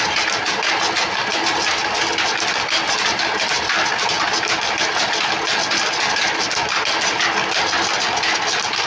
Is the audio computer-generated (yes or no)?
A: no